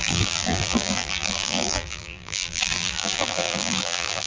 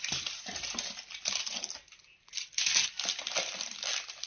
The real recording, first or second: second